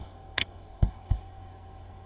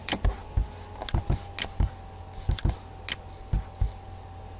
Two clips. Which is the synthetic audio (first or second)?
first